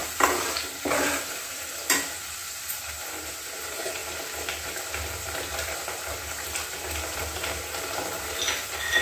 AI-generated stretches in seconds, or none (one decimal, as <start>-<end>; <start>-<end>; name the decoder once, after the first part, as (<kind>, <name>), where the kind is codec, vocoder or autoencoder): 0.0-1.5 (vocoder, BigVGAN v2); 2.4-3.3